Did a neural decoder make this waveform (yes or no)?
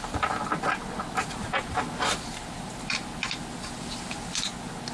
no